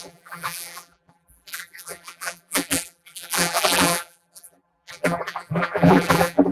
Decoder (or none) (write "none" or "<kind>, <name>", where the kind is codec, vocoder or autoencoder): vocoder, BigVGAN v2